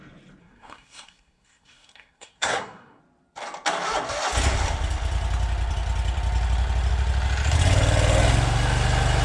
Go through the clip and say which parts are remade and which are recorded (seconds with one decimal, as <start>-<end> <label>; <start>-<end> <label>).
0.0-0.4 recorded; 0.4-3.0 remade; 3.0-9.2 recorded